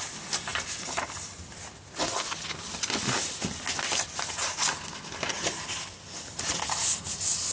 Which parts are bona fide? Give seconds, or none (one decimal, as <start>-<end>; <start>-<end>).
0.0-7.5